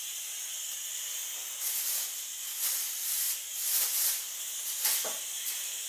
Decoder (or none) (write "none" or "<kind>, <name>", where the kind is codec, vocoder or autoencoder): none